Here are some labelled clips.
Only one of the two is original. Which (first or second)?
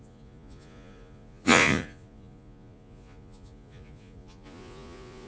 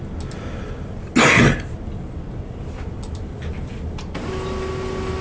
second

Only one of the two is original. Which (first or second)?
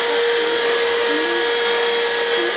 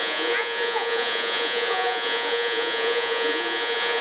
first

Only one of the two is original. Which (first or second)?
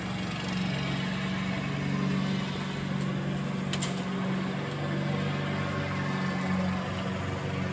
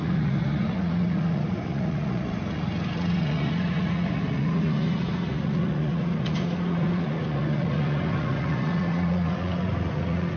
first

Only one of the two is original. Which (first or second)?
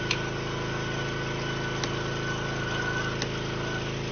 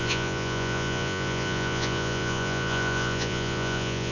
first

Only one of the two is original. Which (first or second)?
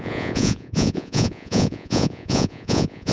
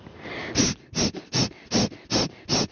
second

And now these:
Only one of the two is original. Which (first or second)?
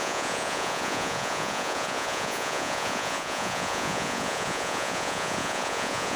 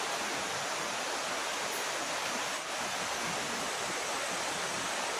second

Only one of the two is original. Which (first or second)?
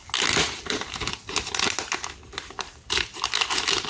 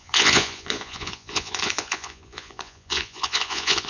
first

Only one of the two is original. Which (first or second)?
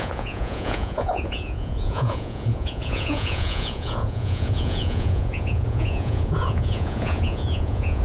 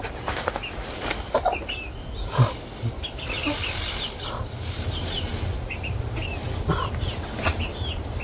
second